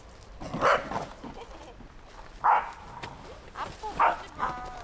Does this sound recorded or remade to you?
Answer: recorded